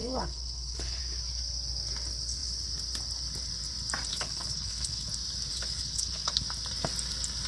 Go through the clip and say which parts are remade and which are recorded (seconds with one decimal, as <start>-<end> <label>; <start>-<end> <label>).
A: 0.0-1.0 remade; 1.0-4.1 recorded; 4.1-5.1 remade; 5.1-5.5 recorded; 5.5-6.3 remade; 6.3-7.5 recorded